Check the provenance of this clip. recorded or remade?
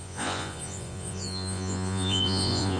remade